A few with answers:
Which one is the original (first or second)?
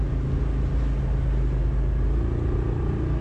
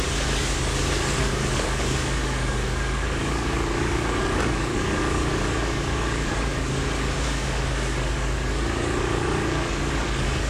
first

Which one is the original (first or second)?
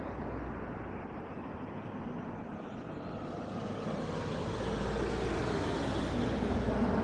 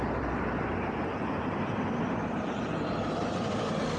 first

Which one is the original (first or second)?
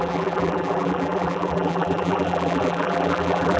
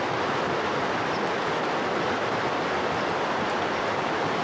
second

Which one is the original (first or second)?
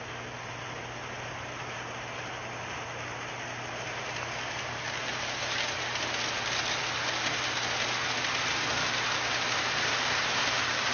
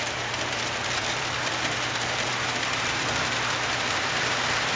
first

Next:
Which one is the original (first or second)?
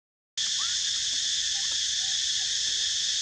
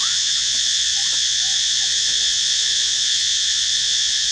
first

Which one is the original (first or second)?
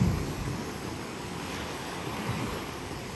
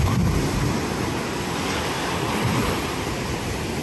second